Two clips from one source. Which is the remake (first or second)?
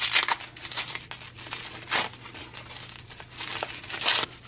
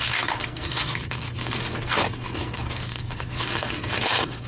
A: second